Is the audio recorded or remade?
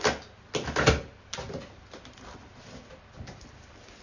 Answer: recorded